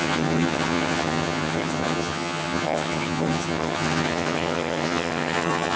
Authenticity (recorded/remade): remade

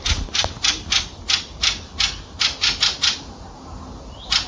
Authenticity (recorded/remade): recorded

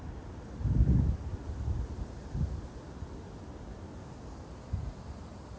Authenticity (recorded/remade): recorded